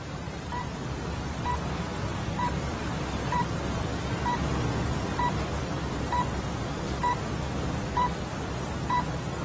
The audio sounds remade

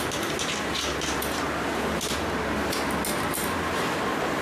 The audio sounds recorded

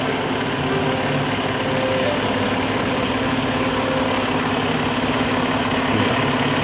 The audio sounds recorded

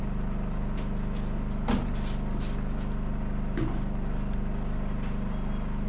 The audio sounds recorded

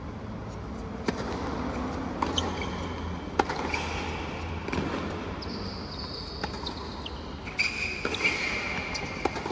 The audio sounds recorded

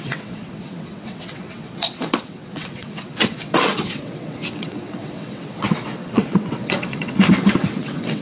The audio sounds remade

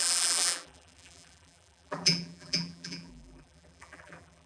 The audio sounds remade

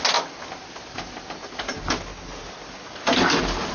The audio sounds recorded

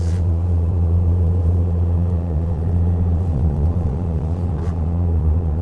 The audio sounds remade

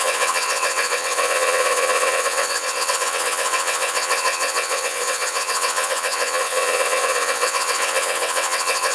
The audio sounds remade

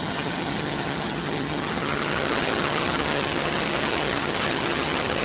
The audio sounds remade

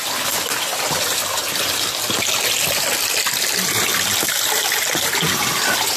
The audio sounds recorded